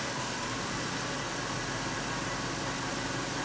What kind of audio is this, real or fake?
fake